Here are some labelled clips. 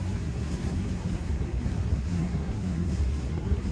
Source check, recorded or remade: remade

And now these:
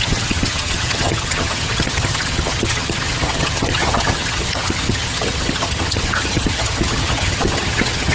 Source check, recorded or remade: remade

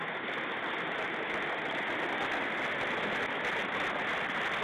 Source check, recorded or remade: recorded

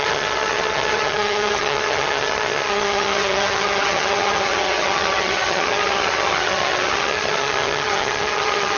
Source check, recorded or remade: remade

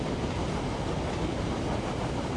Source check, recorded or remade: recorded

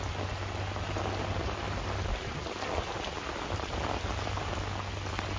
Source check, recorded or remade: recorded